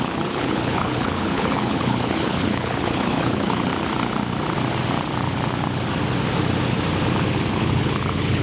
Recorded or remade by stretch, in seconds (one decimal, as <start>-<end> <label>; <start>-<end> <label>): 0.0-3.7 remade; 3.7-7.5 recorded; 7.5-8.4 remade